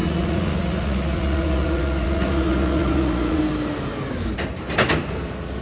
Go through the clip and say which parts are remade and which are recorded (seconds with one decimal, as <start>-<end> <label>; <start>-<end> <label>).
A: 0.0-3.4 remade; 3.4-5.6 recorded